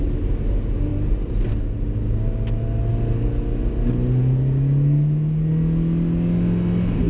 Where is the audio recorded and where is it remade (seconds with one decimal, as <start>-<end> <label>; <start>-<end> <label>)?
0.0-7.1 recorded